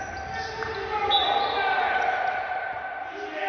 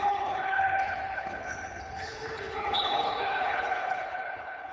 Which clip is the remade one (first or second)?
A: second